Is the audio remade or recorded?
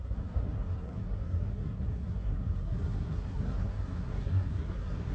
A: remade